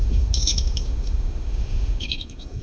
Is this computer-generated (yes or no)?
yes